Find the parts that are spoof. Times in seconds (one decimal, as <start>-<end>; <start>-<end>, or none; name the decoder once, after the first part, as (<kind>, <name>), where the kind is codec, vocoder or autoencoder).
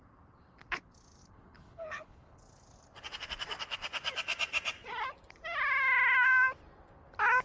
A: 1.2-2.4 (codec, HILCodec)